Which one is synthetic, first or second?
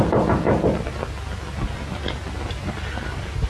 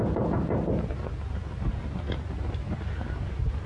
second